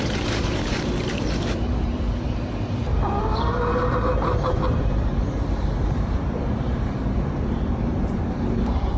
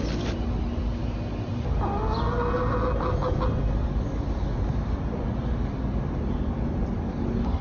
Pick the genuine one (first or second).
second